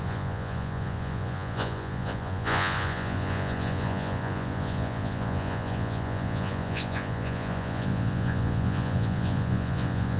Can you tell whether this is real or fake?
fake